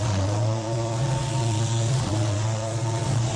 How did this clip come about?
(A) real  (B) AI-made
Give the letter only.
B